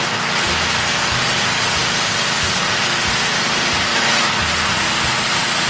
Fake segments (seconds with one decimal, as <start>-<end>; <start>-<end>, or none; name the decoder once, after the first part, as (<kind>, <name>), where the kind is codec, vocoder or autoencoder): 3.9-4.4 (autoencoder, DAC-VAE)